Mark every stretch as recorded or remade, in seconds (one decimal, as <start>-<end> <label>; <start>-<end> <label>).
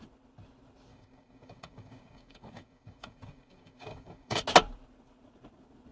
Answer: 0.0-0.9 recorded; 0.9-4.4 remade; 4.4-5.9 recorded